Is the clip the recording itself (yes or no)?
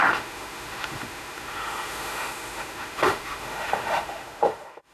no